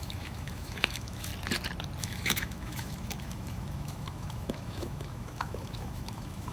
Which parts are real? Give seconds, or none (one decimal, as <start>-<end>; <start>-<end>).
1.3-2.0